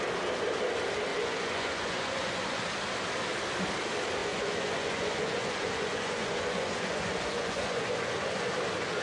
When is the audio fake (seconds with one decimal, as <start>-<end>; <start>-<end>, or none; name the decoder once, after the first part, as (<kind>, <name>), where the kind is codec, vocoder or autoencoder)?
1.1-2.6 (vocoder, Vocos); 4.2-8.5